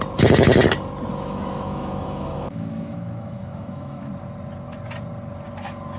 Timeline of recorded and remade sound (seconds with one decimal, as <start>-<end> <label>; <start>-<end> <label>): 0.0-1.1 recorded; 1.1-4.1 remade; 4.1-6.0 recorded